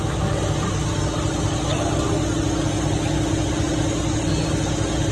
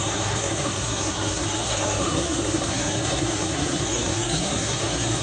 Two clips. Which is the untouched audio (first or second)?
first